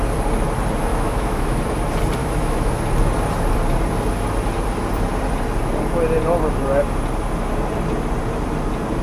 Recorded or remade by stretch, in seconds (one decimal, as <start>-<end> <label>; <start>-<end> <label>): 0.0-0.9 recorded; 0.9-1.6 remade; 1.6-2.2 recorded; 2.2-2.8 remade; 2.8-9.0 recorded